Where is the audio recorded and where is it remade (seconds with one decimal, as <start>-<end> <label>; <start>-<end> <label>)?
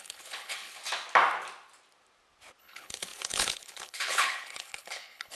0.0-0.8 remade; 0.8-2.6 recorded; 2.6-5.3 remade